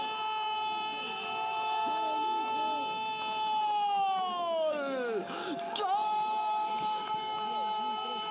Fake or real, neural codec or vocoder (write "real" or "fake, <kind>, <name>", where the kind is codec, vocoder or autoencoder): fake, autoencoder, DAC-VAE